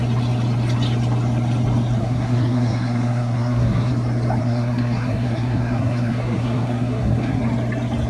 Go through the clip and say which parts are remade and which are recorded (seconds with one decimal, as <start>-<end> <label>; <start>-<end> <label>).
0.0-2.0 recorded; 2.0-3.9 remade; 3.9-4.4 recorded; 4.4-7.4 remade; 7.4-8.1 recorded